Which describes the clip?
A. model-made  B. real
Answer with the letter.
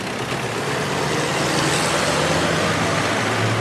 B